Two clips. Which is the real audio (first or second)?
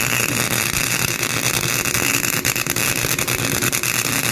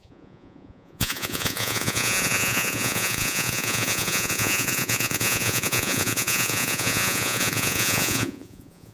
first